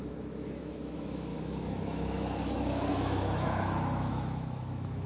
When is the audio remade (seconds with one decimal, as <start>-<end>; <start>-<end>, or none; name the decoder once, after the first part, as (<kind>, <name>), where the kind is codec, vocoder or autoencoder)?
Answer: 0.0-5.1 (autoencoder, DAC-VAE)